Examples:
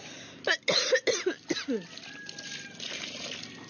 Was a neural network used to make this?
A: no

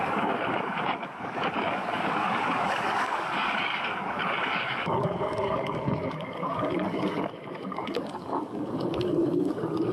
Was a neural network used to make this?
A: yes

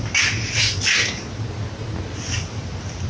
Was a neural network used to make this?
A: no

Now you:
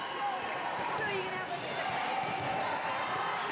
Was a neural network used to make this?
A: no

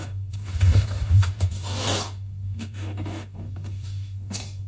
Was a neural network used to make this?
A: yes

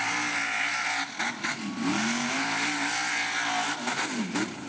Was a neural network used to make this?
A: no